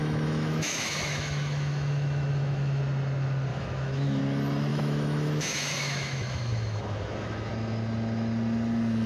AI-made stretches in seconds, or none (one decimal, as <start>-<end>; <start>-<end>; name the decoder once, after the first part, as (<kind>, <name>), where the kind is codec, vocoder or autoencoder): 0.0-2.8 (autoencoder, DAC-VAE); 3.5-4.2; 4.7-7.5